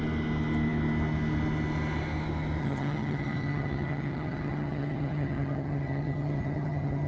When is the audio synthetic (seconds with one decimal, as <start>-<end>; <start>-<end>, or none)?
2.6-7.1